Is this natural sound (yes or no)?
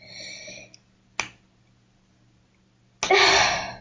yes